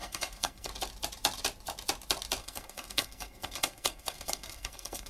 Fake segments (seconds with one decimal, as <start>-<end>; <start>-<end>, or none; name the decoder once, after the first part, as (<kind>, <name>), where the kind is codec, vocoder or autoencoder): 0.0-0.7 (codec, SNAC); 2.4-5.1